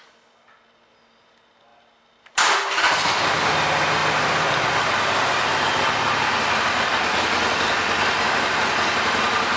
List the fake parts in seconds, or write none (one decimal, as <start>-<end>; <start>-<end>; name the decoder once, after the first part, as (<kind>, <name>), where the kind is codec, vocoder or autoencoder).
1.7-3.1 (vocoder, BigVGAN v2); 4.0-5.8